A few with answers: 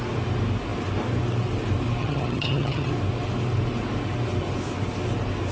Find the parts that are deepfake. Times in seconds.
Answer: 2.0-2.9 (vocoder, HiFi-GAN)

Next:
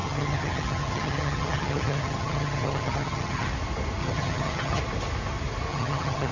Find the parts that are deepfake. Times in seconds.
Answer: 0.0-3.5 (vocoder, HiFi-GAN); 4.0-4.8; 5.7-6.3

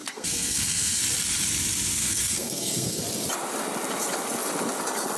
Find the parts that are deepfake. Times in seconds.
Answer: 0.0-1.0 (codec, SNAC); 2.0-3.0

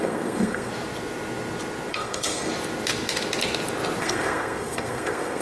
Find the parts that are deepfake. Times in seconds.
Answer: 0.0-0.7 (codec, SNAC); 1.9-2.5; 4.0-5.4

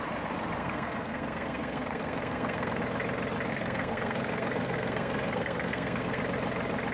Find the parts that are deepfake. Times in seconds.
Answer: 0.6-2.8 (codec, SNAC); 3.5-6.2

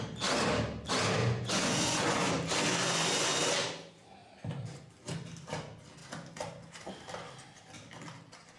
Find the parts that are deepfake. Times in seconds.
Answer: 1.2-2.3 (vocoder, Vocos); 2.7-3.4

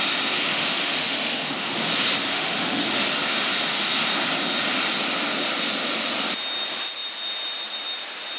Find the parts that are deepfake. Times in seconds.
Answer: 0.5-1.7 (autoencoder, DAC-VAE); 2.3-2.8